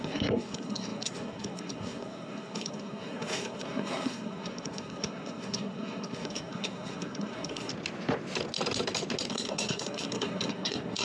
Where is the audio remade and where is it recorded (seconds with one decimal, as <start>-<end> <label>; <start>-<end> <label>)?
0.0-7.7 remade; 7.7-9.3 recorded; 9.3-11.0 remade